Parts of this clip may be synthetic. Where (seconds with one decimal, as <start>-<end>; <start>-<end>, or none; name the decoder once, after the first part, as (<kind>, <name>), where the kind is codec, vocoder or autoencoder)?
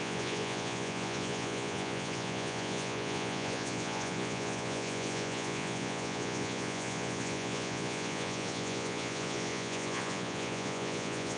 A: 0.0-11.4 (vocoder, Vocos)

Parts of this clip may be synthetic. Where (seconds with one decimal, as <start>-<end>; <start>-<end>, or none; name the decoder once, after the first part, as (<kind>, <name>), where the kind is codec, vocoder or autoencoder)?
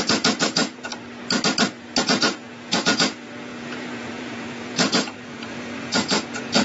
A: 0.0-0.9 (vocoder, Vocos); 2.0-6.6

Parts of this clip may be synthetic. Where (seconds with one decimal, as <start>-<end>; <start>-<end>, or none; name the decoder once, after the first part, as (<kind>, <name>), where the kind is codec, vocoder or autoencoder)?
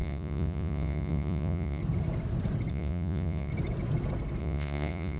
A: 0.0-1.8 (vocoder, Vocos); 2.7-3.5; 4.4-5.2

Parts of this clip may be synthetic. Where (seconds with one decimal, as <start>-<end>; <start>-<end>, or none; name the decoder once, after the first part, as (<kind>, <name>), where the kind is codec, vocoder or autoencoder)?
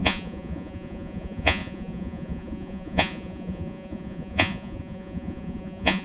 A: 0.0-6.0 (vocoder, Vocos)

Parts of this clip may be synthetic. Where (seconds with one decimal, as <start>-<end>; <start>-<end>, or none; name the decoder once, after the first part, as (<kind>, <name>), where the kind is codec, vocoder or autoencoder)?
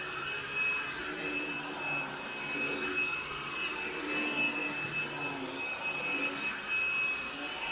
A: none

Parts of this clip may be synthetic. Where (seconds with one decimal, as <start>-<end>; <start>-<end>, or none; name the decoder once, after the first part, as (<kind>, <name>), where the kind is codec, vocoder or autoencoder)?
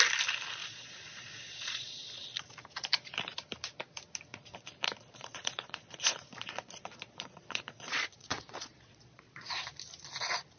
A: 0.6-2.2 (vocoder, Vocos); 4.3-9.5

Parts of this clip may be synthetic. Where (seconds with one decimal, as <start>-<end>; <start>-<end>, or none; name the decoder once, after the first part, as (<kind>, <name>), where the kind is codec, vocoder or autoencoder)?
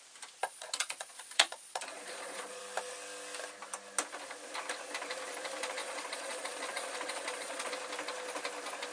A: 0.4-2.6 (vocoder, Vocos); 5.8-7.7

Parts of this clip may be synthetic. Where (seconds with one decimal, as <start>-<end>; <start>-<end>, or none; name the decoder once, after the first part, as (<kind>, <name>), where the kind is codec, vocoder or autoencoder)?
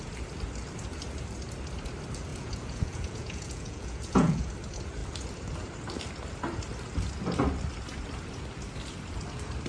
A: 2.3-4.5 (vocoder, Vocos)